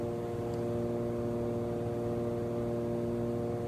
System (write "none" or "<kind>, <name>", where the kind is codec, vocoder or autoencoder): none